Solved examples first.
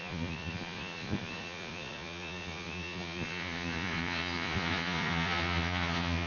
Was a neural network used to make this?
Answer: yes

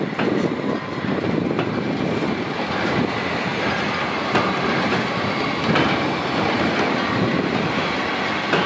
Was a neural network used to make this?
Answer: no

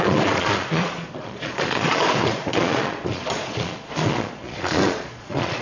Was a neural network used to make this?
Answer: yes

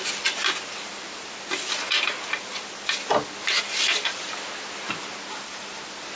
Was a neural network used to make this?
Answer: no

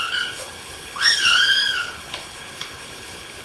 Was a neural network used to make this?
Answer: yes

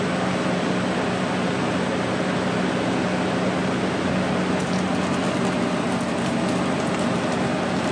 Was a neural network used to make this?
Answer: no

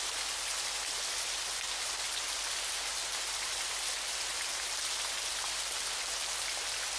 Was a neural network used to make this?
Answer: no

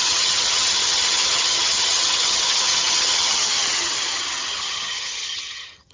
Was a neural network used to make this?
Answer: yes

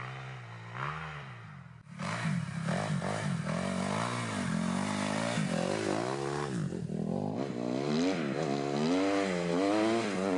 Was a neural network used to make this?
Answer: no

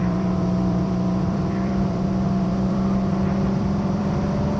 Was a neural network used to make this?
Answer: yes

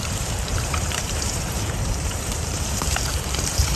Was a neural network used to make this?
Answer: yes